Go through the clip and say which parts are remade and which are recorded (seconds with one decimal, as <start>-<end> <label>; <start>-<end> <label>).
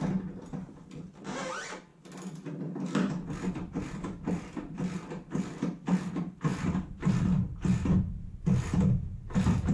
0.0-1.9 remade; 1.9-3.3 recorded; 3.3-6.5 remade; 6.5-9.1 recorded; 9.1-9.7 remade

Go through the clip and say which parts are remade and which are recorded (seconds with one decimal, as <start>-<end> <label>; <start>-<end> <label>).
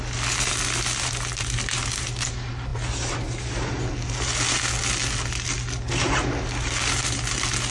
0.0-7.7 recorded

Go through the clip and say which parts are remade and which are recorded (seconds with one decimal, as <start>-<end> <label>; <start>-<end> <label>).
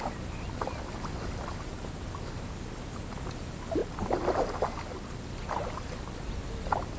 0.0-7.0 recorded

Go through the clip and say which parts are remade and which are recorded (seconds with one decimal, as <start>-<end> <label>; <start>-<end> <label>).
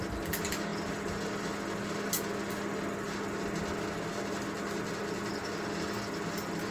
0.0-6.7 recorded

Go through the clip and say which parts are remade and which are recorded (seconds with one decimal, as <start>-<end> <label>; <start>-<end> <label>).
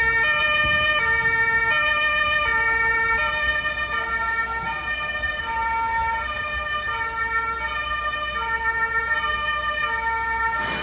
0.0-0.4 recorded; 0.4-1.0 remade; 1.0-10.8 recorded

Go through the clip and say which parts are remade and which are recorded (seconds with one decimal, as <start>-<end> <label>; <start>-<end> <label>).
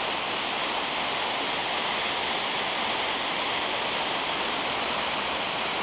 0.0-5.8 recorded